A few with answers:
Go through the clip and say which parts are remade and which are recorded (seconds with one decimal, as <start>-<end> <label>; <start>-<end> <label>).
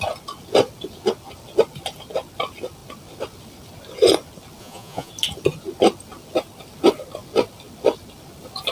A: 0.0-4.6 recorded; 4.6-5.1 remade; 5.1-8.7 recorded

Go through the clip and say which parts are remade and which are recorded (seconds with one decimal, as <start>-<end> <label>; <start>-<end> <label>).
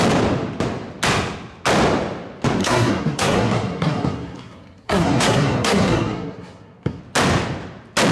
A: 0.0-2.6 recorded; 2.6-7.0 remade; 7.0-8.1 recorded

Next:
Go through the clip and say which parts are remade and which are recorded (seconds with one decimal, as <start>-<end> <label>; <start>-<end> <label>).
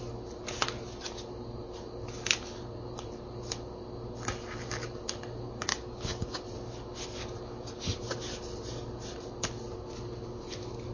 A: 0.0-5.7 recorded; 5.7-6.4 remade; 6.4-10.9 recorded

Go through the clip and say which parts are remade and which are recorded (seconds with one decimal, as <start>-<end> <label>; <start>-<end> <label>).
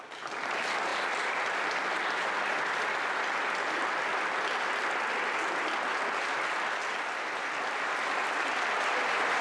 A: 0.0-9.4 recorded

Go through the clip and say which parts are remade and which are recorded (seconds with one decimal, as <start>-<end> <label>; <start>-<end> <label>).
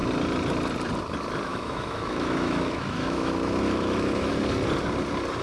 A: 0.0-1.5 recorded; 1.5-4.3 remade; 4.3-5.4 recorded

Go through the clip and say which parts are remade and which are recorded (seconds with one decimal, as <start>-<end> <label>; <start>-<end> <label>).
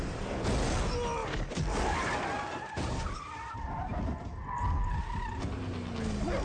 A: 0.0-6.4 recorded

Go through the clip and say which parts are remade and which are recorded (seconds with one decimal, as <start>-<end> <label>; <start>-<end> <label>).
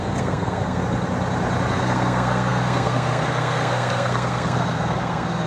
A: 0.0-0.8 remade; 0.8-1.7 recorded; 1.7-5.5 remade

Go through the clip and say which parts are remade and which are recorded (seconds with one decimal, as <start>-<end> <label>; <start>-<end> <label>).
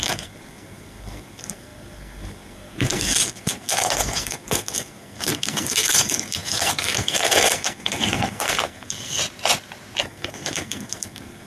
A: 0.0-9.2 remade; 9.2-10.0 recorded; 10.0-11.5 remade